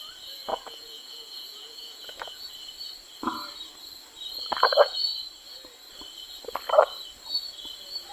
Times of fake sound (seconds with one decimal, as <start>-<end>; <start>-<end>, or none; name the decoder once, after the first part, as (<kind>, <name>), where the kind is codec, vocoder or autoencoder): 0.5-2.5 (vocoder, Vocos)